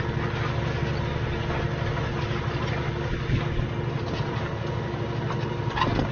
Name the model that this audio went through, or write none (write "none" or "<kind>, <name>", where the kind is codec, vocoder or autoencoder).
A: none